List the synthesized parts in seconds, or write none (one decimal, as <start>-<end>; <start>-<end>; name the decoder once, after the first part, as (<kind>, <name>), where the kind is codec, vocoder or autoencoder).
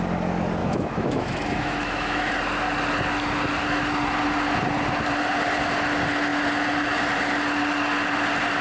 0.6-2.3 (autoencoder, DAC-VAE)